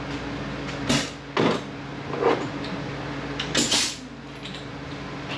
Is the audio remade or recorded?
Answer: recorded